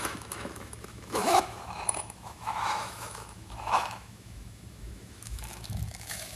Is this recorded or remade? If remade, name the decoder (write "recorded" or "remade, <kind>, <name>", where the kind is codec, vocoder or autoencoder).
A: remade, autoencoder, DAC-VAE